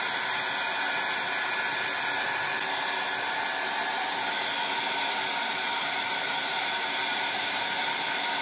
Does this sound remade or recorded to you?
recorded